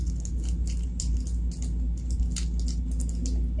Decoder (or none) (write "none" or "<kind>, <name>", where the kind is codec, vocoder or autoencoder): none